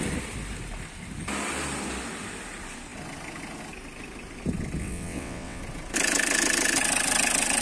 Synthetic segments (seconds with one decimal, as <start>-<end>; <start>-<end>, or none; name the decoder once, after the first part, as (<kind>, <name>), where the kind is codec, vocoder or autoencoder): 4.8-5.6 (vocoder, WaveNeXt)